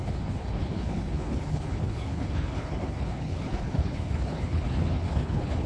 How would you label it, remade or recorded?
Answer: remade